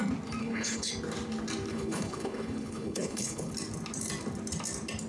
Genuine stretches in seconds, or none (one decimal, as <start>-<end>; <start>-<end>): 0.0-0.4; 0.9-1.7; 3.5-5.1